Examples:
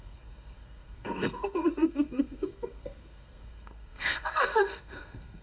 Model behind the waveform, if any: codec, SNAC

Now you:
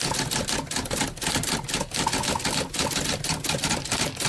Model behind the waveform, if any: none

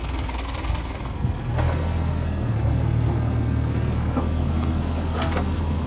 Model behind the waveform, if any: codec, SNAC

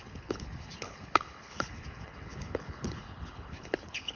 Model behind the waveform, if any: codec, HILCodec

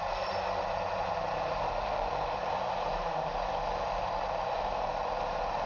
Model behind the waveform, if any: none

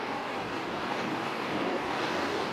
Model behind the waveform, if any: codec, DAC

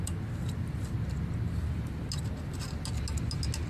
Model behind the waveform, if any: none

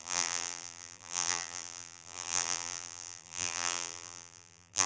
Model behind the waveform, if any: vocoder, BigVGAN v2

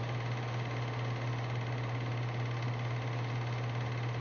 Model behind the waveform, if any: none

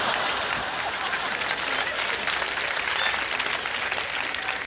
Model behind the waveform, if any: none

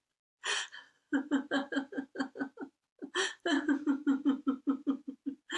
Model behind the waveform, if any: none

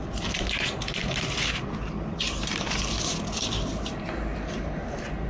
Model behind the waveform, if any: none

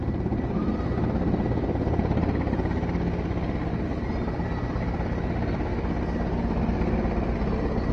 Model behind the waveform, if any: none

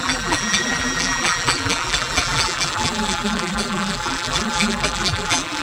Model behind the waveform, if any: vocoder, BigVGAN v2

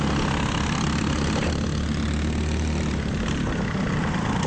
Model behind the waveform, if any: none